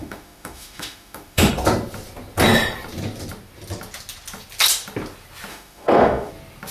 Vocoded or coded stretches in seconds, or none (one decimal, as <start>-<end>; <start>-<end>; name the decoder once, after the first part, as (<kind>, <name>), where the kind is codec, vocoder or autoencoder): 0.0-1.5 (autoencoder, DAC-VAE); 5.5-6.3